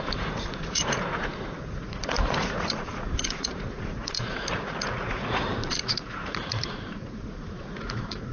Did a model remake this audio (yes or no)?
yes